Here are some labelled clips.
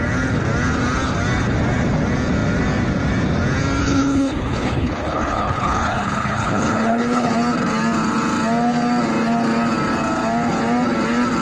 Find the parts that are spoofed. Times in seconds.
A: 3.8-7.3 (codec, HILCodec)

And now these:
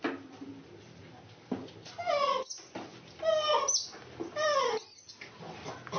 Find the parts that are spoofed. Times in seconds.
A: none

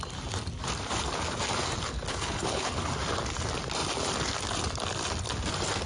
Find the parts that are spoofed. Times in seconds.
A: 2.1-2.9 (codec, HILCodec)